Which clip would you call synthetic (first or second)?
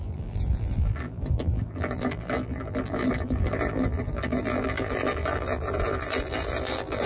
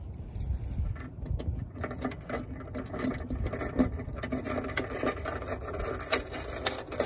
first